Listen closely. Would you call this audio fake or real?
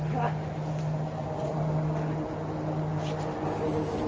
real